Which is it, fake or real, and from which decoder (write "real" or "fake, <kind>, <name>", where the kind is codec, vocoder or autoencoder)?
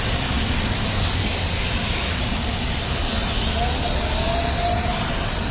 real